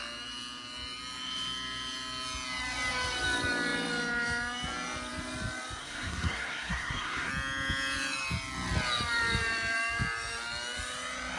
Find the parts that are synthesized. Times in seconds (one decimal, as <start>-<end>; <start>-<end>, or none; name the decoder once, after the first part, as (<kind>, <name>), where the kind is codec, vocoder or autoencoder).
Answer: 5.8-7.3 (codec, SNAC)